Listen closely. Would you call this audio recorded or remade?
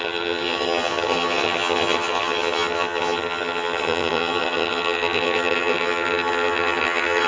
remade